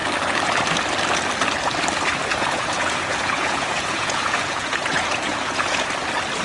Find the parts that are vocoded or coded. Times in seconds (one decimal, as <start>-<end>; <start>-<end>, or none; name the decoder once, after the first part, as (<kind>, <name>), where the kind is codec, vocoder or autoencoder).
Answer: 2.3-5.9 (vocoder, Vocos)